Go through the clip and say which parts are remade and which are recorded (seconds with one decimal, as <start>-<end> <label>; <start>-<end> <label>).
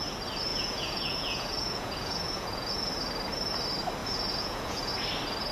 0.0-0.5 recorded; 0.5-2.9 remade; 2.9-4.0 recorded; 4.0-4.9 remade; 4.9-5.5 recorded